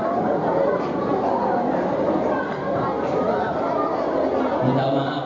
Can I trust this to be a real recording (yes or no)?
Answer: yes